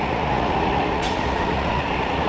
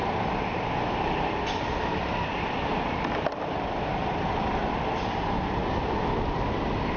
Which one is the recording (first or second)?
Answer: second